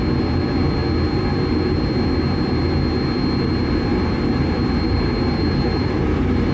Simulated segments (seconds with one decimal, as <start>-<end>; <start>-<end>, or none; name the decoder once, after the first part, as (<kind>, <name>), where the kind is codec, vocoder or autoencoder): 3.9-6.5 (vocoder, BigVGAN v2)